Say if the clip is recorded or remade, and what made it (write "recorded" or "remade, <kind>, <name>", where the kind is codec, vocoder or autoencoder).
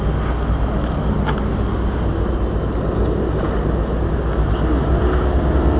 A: recorded